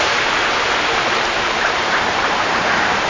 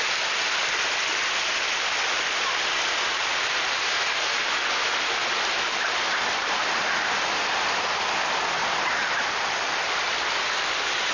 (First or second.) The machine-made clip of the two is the first